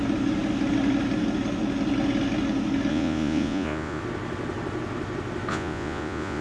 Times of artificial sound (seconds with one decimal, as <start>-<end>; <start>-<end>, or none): 2.9-4.0; 5.5-6.4